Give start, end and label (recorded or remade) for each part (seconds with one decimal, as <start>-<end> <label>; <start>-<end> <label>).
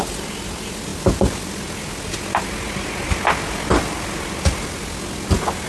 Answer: 0.0-5.7 recorded